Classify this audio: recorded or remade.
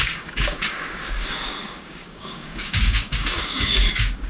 remade